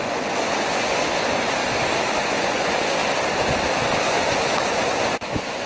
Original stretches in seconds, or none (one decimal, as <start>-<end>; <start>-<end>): 1.6-2.2; 3.0-4.0